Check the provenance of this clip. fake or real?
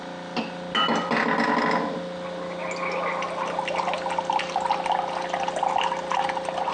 real